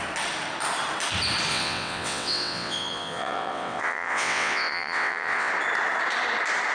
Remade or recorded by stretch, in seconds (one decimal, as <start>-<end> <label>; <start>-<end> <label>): 0.0-1.5 recorded; 1.5-5.5 remade; 5.5-6.7 recorded